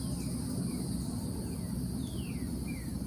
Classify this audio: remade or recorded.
recorded